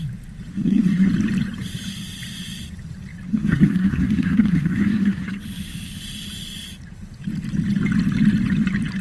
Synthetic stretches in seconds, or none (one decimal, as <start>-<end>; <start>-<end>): 0.5-1.1; 3.3-5.4